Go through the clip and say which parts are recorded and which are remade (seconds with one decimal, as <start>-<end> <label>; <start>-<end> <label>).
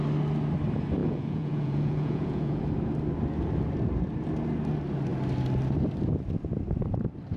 0.0-1.0 recorded; 1.0-2.6 remade; 2.6-7.4 recorded